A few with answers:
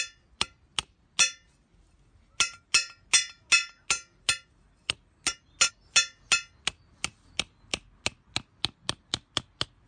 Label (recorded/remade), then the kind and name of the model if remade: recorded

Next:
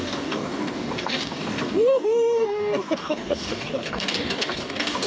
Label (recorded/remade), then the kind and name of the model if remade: remade, codec, DAC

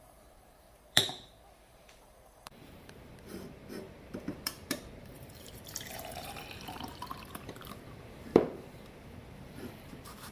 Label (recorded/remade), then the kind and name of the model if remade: remade, vocoder, BigVGAN v2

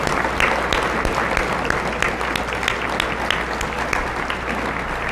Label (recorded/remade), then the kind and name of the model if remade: recorded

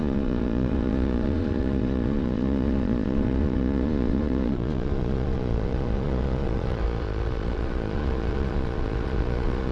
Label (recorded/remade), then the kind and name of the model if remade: remade, vocoder, Vocos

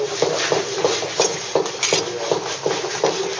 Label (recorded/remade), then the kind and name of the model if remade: recorded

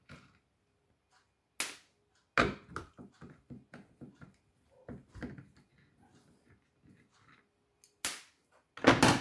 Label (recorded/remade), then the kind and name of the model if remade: recorded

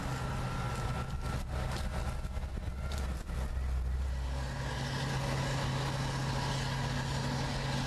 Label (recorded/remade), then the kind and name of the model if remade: recorded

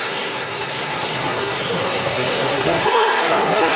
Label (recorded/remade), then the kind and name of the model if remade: remade, codec, SNAC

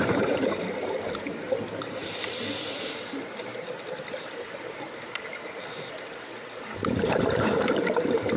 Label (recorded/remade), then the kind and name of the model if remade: remade, vocoder, BigVGAN v2